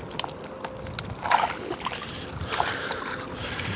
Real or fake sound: real